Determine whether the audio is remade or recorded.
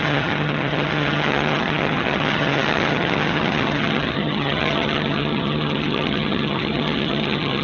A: remade